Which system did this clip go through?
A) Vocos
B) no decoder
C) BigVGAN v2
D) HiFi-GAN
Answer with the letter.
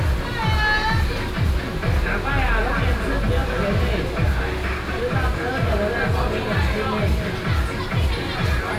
B